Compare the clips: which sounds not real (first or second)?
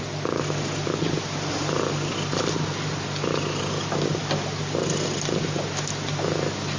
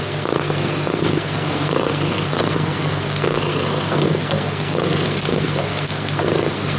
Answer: second